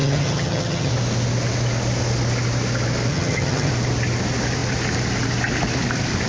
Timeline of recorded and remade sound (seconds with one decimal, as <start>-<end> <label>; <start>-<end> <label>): 0.0-0.9 remade; 0.9-3.1 recorded; 3.1-3.7 remade; 3.7-6.3 recorded